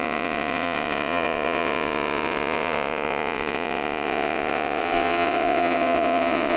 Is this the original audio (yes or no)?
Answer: no